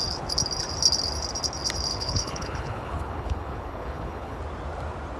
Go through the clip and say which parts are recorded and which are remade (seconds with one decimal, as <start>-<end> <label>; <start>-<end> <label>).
0.0-1.9 recorded; 1.9-4.4 remade; 4.4-5.2 recorded